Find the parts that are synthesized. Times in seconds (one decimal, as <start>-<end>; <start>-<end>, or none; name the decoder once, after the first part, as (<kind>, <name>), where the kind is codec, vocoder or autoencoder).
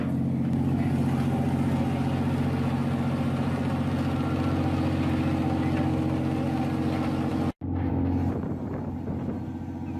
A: none